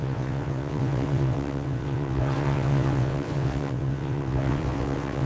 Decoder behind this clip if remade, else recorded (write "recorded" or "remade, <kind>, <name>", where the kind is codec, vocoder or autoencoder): remade, vocoder, WaveNeXt